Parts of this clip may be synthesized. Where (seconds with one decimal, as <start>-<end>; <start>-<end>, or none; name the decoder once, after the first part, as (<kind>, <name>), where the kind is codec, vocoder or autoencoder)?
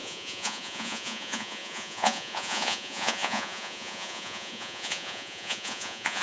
0.0-6.2 (vocoder, Vocos)